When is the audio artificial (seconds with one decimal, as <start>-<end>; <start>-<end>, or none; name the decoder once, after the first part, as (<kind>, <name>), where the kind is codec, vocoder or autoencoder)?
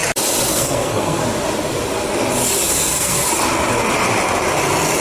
0.5-1.2 (codec, SNAC); 2.8-3.2